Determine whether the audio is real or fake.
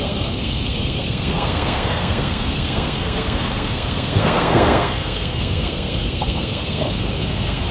fake